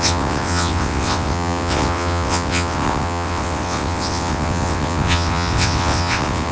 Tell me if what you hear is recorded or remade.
remade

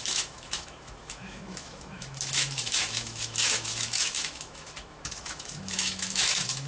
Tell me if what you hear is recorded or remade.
remade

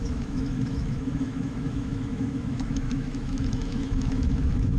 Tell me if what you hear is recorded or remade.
remade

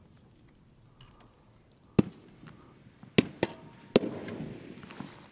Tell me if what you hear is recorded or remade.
recorded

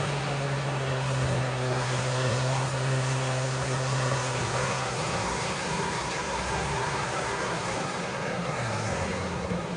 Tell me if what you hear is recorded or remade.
remade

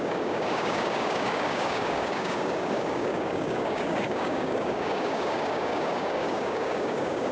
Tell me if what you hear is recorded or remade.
remade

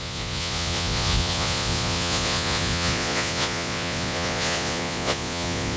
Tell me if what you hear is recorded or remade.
remade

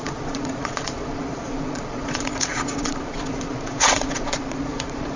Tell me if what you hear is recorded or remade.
remade